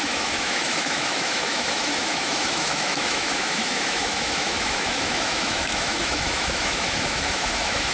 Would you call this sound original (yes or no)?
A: no